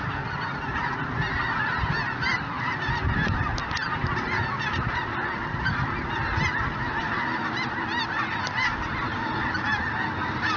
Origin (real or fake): real